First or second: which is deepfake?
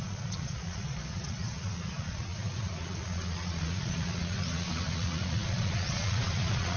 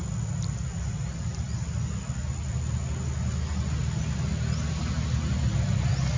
first